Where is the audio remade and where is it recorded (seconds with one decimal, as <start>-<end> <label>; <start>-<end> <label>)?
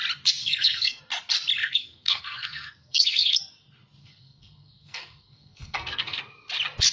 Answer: 0.0-0.4 recorded; 0.4-1.0 remade; 1.0-1.6 recorded; 1.6-3.4 remade; 3.4-4.0 recorded; 4.0-6.2 remade; 6.2-6.9 recorded